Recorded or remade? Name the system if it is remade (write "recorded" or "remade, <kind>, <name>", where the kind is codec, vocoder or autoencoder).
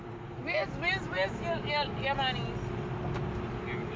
recorded